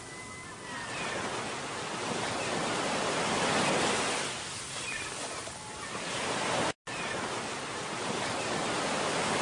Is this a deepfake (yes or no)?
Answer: no